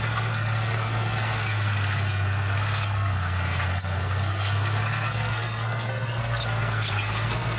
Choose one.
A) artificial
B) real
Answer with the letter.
A